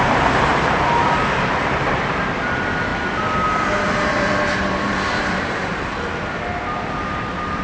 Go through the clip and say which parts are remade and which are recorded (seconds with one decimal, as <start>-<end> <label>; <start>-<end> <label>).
0.0-0.5 recorded; 0.5-2.2 remade; 2.2-2.9 recorded; 2.9-5.9 remade; 5.9-6.5 recorded; 6.5-7.6 remade